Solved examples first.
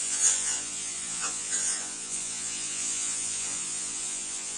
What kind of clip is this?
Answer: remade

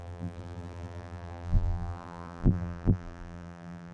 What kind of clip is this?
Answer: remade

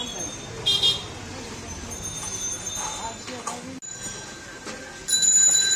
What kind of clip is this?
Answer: recorded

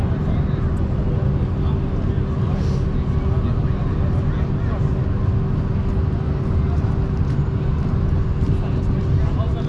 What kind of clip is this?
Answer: recorded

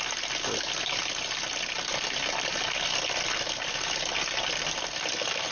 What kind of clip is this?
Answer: recorded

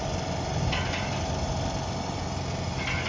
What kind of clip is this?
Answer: recorded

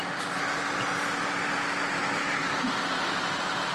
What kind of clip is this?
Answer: recorded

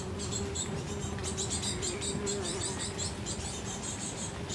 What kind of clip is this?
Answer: recorded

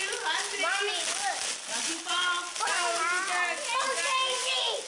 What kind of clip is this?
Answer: recorded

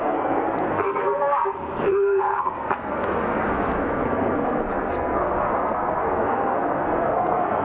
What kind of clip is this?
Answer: remade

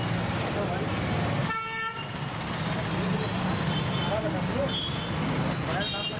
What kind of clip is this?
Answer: recorded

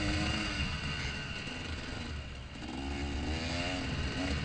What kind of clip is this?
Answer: recorded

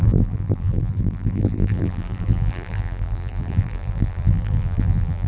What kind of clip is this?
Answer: remade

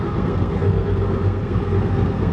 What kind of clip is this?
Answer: remade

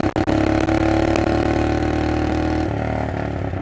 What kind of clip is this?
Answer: recorded